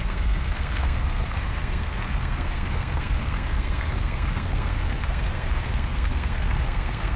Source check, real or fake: fake